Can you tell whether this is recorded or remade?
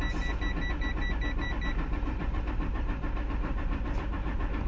recorded